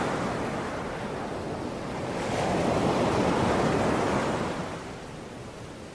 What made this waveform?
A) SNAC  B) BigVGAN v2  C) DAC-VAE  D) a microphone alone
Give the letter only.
D